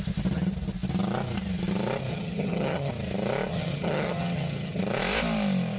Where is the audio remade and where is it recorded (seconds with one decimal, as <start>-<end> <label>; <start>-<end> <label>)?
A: 0.0-2.1 recorded; 2.1-2.9 remade; 2.9-3.5 recorded; 3.5-4.8 remade; 4.8-5.8 recorded